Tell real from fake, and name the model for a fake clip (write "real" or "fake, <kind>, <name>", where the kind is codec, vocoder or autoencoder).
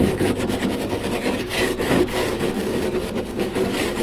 fake, codec, DAC